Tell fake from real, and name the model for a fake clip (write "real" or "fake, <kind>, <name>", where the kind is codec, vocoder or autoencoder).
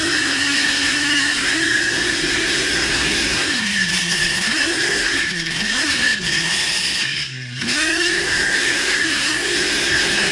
fake, codec, SNAC